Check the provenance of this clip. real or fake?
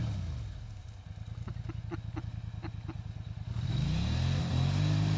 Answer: real